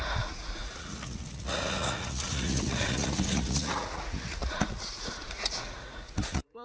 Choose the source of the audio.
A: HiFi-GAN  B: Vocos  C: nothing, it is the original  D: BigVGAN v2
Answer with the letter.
B